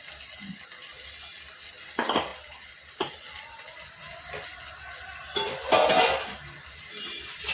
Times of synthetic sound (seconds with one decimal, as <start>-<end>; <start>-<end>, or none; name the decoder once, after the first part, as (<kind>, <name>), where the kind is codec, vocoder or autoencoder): none